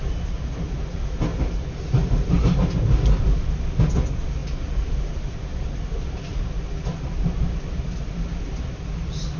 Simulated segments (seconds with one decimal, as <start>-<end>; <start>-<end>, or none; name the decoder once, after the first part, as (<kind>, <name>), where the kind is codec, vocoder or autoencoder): none